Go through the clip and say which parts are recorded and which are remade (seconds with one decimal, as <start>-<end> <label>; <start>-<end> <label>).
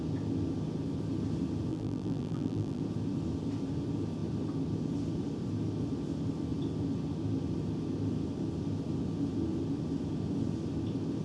0.0-1.7 recorded; 1.7-2.8 remade; 2.8-11.2 recorded